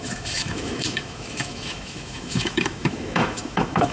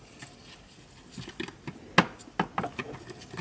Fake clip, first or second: first